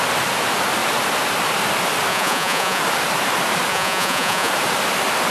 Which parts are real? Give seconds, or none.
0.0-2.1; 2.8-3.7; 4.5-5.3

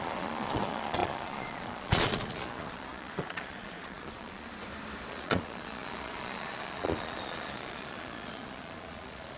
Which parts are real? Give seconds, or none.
4.5-5.1

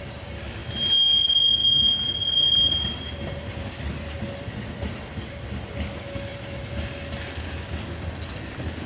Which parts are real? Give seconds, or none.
0.0-8.9

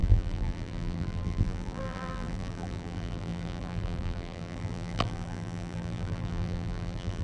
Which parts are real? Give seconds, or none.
none

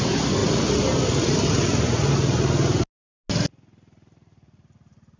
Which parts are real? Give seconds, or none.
0.0-5.2